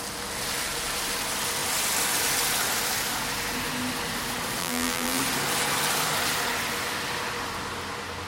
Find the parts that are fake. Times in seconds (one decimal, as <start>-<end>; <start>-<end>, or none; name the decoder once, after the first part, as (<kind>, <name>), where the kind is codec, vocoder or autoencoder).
4.6-5.2 (vocoder, BigVGAN v2)